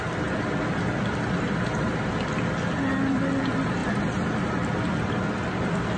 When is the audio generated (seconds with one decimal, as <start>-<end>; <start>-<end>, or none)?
none